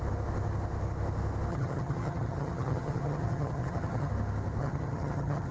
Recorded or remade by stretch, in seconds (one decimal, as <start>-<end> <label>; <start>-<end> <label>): 0.0-1.5 recorded; 1.5-4.1 remade; 4.1-4.6 recorded; 4.6-5.5 remade